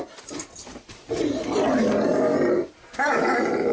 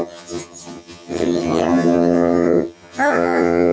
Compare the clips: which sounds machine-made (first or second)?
second